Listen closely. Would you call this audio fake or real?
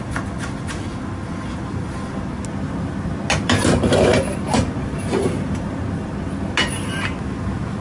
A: real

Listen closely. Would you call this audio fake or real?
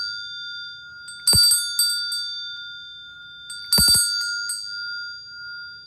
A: real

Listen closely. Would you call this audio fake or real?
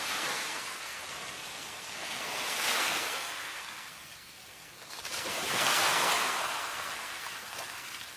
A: fake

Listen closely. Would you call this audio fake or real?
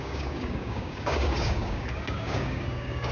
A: fake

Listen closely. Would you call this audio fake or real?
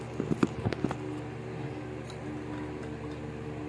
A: real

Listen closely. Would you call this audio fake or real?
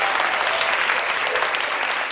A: real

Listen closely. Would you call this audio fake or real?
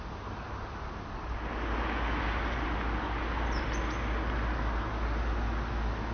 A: real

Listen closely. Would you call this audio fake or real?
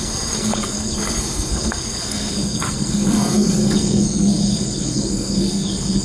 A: fake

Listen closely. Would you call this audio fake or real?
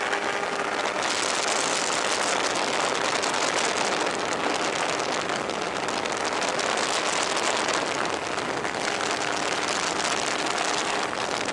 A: real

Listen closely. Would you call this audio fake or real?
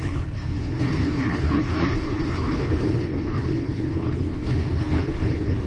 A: fake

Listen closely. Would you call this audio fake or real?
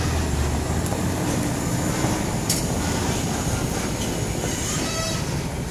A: real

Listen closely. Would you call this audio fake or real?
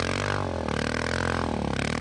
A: real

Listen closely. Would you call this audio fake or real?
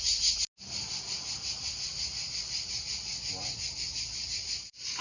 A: real